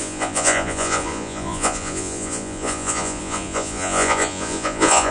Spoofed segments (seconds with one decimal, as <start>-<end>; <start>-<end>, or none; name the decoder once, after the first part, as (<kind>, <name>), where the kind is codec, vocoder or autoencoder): 0.0-5.1 (vocoder, Vocos)